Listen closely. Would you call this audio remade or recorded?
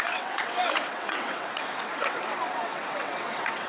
remade